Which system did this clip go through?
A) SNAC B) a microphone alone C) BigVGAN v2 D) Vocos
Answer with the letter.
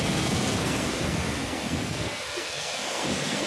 A